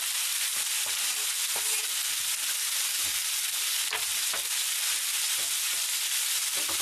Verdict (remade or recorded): recorded